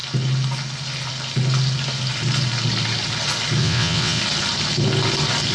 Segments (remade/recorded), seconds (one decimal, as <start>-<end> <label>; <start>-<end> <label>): 0.0-3.6 recorded; 3.6-4.2 remade; 4.2-5.5 recorded